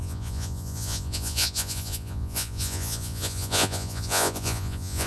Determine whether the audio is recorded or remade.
remade